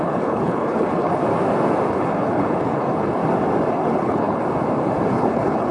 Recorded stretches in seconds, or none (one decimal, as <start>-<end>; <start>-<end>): 1.2-1.9; 3.2-3.7; 4.4-5.1